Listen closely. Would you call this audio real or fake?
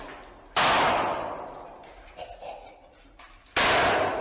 real